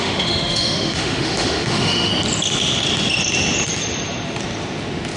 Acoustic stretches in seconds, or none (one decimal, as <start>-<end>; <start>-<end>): 2.1-5.2